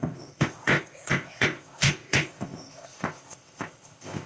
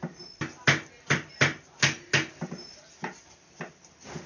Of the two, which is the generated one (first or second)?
first